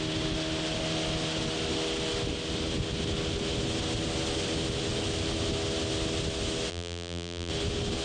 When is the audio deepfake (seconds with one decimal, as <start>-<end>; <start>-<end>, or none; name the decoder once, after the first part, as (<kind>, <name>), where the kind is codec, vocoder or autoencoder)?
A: 6.7-7.5 (vocoder, BigVGAN v2)